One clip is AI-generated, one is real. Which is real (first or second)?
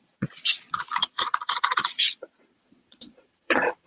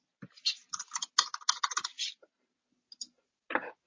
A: second